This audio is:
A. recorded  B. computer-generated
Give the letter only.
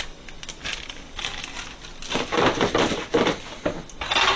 A